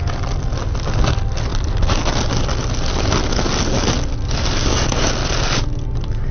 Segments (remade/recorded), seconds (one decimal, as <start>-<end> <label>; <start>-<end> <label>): 0.0-6.3 recorded